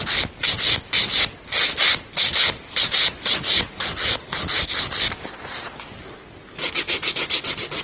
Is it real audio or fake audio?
real